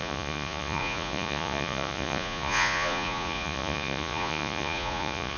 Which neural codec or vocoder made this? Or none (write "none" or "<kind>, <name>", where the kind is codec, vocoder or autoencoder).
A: vocoder, Vocos